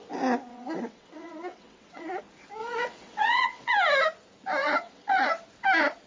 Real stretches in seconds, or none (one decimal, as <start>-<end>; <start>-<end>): 0.0-0.5; 2.2-2.6; 3.7-4.6; 5.3-6.1